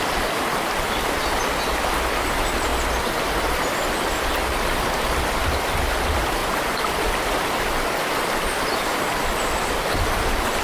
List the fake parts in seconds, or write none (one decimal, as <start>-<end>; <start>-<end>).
none